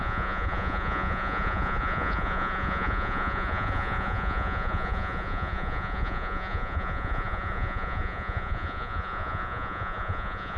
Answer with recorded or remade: remade